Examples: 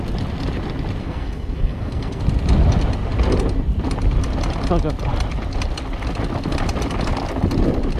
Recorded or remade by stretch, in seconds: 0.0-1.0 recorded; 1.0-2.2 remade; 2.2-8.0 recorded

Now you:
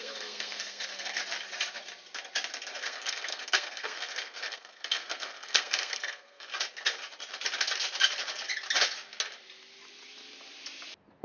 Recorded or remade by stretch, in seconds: 0.0-1.2 remade; 1.2-2.8 recorded; 2.8-6.5 remade; 6.5-11.2 recorded

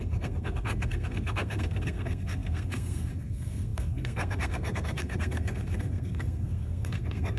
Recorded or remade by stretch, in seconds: 0.0-7.4 remade

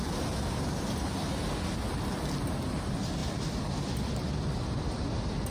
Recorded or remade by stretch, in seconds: 0.0-5.5 recorded

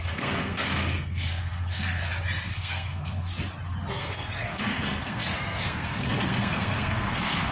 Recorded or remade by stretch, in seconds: 0.0-2.0 remade; 2.0-2.5 recorded; 2.5-3.3 remade; 3.3-3.9 recorded; 3.9-7.5 remade

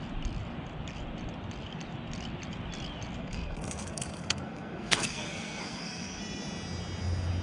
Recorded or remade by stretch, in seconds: 0.0-3.2 recorded; 3.2-6.2 remade; 6.2-7.4 recorded

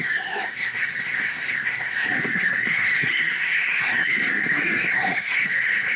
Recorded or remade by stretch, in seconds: 0.0-6.0 remade

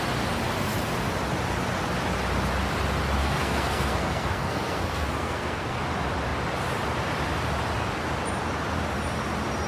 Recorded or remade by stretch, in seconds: 0.0-3.2 recorded; 3.2-5.8 remade; 5.8-9.7 recorded